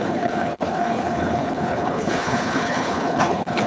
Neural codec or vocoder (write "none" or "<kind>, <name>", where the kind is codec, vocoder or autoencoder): codec, HILCodec